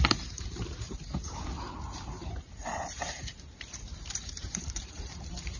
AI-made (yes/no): yes